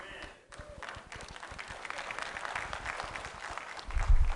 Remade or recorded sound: remade